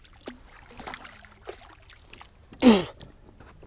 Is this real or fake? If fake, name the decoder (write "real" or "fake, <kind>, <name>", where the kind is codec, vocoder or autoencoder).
real